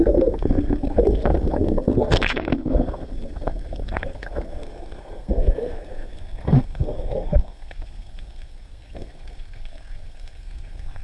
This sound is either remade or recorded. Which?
remade